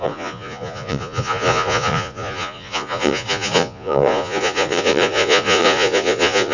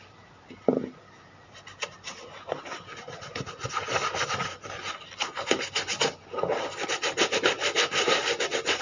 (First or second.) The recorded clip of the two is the second